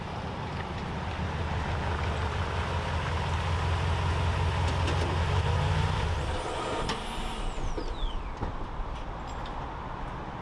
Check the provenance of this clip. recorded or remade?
recorded